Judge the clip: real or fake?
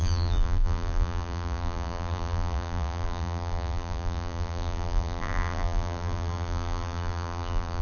fake